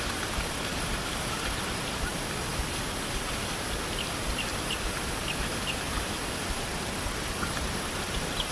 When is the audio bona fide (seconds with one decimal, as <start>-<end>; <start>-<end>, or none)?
2.1-6.4